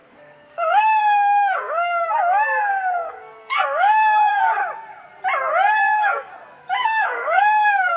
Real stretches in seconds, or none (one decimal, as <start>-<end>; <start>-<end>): 4.6-5.7; 6.3-6.8